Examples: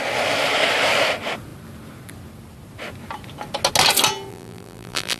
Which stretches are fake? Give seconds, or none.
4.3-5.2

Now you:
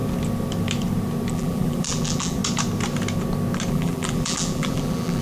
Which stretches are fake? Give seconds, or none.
1.3-2.4; 3.7-5.2